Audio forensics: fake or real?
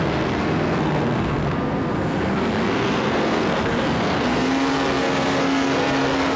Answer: fake